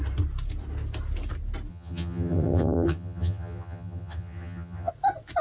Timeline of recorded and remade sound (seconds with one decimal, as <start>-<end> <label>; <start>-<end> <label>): 0.0-1.7 recorded; 1.7-4.9 remade; 4.9-5.4 recorded